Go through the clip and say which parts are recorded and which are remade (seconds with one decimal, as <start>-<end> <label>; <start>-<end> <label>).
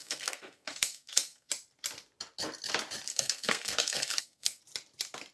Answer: 0.0-1.5 remade; 1.5-3.1 recorded; 3.1-4.6 remade; 4.6-5.3 recorded